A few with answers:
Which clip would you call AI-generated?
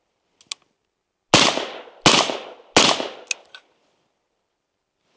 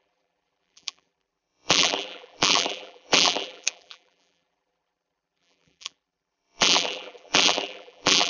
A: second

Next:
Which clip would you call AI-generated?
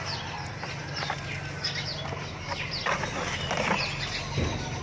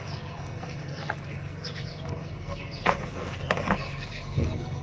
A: second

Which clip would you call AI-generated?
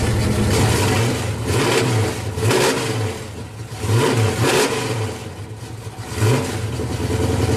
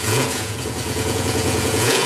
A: second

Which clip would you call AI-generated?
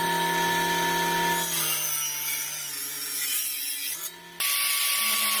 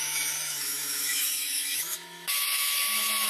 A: second